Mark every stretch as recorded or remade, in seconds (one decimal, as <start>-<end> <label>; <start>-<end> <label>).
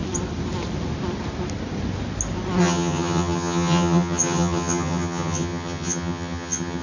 0.0-2.6 recorded; 2.6-6.8 remade